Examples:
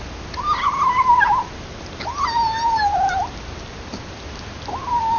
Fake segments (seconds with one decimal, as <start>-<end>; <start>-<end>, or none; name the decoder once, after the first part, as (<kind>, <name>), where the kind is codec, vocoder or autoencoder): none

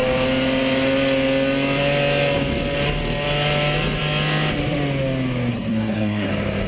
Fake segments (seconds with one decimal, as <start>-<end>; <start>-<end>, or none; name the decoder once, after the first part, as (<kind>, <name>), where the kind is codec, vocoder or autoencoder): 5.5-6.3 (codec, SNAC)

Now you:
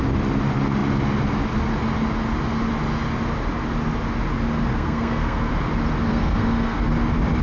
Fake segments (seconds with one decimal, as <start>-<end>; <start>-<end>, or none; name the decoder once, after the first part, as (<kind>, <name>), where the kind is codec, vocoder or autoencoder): 4.7-5.5 (codec, SNAC); 6.1-6.8

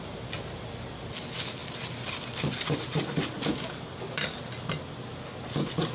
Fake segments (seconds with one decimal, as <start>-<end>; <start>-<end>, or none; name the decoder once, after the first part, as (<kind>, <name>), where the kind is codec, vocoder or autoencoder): none